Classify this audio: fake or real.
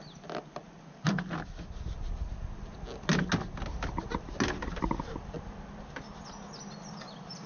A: real